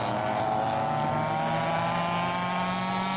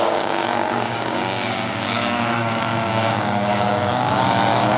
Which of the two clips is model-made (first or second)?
second